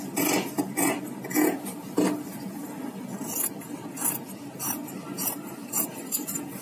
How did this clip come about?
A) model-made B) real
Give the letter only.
B